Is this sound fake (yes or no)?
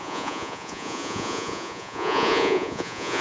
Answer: yes